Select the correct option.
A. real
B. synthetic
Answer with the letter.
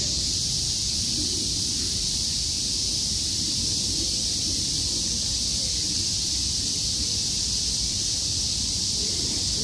B